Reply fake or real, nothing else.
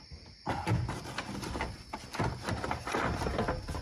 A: real